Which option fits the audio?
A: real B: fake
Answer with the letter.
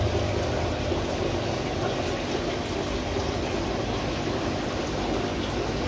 A